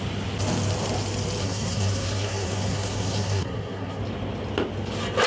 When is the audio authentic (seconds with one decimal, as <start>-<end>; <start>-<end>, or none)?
0.0-1.4; 4.0-5.3